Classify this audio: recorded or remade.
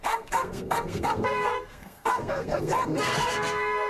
remade